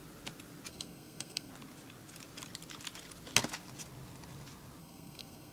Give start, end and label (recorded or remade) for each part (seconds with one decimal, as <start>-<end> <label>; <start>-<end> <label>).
0.0-0.7 recorded; 0.7-1.5 remade; 1.5-4.8 recorded; 4.8-5.5 remade